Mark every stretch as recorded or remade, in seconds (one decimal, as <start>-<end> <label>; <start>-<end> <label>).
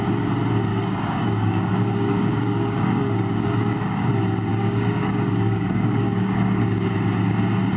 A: 0.0-0.7 recorded; 0.7-4.1 remade; 4.1-4.5 recorded; 4.5-6.9 remade; 6.9-7.8 recorded